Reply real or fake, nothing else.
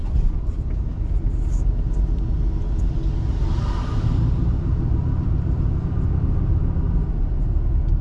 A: real